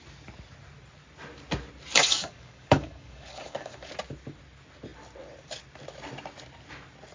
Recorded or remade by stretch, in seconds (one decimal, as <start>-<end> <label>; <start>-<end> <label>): 0.0-2.0 recorded; 2.0-3.9 remade; 3.9-7.1 recorded